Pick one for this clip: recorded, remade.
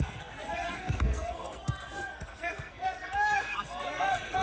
remade